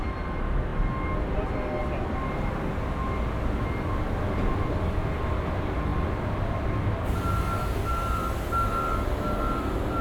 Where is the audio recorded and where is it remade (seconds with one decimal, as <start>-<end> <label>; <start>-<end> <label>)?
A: 0.0-10.0 recorded